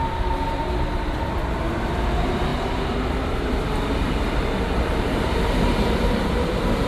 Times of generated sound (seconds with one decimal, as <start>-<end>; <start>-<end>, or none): none